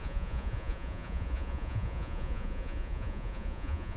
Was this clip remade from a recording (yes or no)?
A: yes